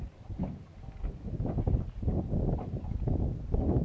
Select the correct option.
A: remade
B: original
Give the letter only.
B